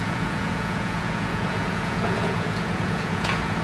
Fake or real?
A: fake